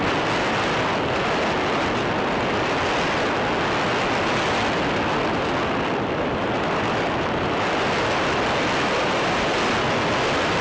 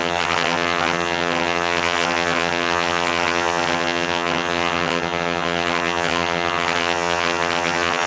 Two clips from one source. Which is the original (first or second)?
first